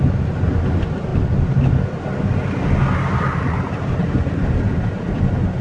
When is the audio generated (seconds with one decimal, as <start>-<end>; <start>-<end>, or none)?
none